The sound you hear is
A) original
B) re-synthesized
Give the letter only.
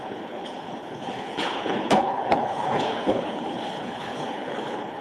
B